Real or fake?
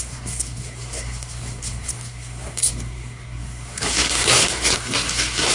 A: fake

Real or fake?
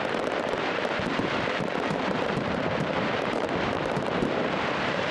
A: fake